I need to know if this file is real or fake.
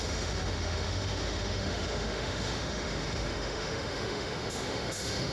fake